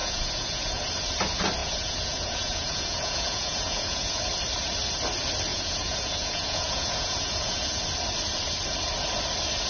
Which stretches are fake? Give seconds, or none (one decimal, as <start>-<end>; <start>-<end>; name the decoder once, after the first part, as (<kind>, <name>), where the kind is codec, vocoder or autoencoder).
0.0-0.9 (vocoder, Vocos); 1.6-4.2; 5.5-7.8